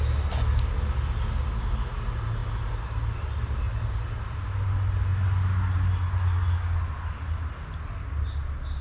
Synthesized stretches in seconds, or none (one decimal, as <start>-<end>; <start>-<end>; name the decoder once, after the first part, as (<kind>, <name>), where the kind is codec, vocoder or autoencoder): none